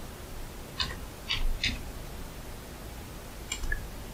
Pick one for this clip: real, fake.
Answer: real